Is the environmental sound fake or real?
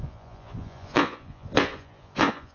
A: fake